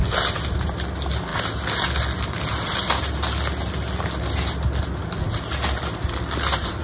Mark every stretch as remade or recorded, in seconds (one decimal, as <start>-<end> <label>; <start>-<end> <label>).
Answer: 0.0-6.8 recorded